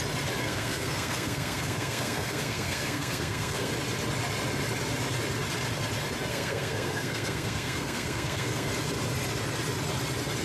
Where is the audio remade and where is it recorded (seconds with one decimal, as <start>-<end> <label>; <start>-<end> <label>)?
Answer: 0.0-0.4 recorded; 0.4-3.7 remade; 3.7-6.3 recorded; 6.3-8.7 remade; 8.7-10.4 recorded